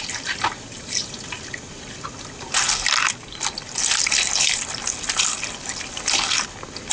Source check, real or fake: fake